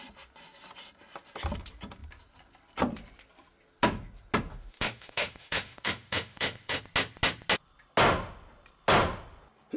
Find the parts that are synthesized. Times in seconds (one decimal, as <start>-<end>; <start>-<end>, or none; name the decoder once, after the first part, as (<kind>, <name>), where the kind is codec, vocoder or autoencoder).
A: 4.5-6.8 (autoencoder, DAC-VAE)